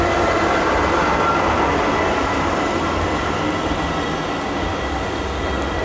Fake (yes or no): no